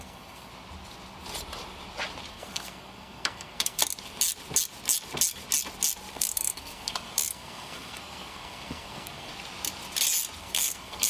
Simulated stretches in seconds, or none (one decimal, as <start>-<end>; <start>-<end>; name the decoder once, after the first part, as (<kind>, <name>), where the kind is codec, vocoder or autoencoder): 0.0-0.5 (codec, SNAC); 2.3-3.8; 6.1-9.3; 10.4-11.1